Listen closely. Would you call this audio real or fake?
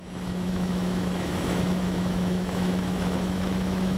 fake